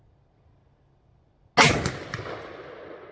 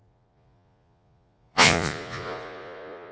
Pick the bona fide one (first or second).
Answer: first